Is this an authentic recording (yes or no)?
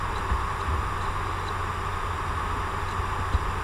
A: yes